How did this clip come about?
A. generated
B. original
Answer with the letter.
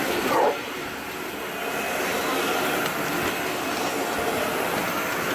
B